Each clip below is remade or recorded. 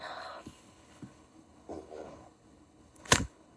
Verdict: remade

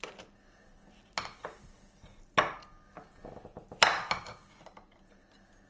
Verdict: recorded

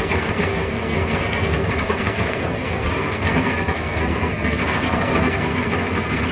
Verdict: remade